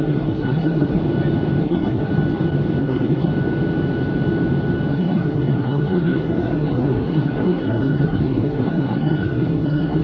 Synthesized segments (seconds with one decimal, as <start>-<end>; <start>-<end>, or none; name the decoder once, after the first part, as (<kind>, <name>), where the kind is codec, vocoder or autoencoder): 0.0-1.0 (codec, SNAC); 1.6-2.1; 2.8-3.3; 4.9-10.0